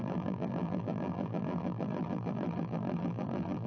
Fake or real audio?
fake